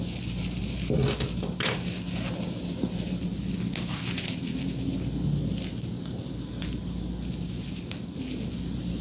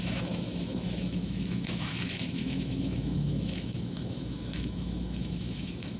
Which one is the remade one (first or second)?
second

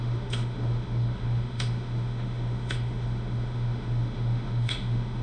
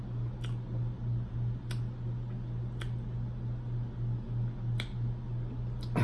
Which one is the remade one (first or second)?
first